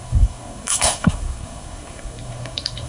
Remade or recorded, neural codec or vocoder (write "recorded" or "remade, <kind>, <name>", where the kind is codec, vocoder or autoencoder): remade, codec, SNAC